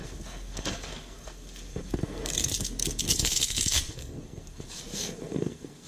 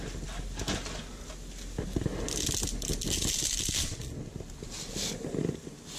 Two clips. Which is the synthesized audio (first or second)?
first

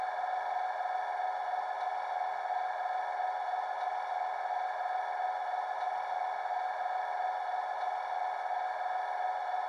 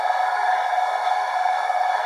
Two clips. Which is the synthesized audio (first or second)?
second